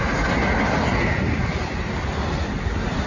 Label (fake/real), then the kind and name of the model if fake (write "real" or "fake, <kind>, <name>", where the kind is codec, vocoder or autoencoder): real